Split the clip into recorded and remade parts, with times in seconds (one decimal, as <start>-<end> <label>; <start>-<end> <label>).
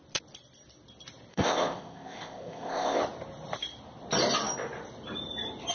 0.0-1.3 recorded; 1.3-3.0 remade; 3.0-5.7 recorded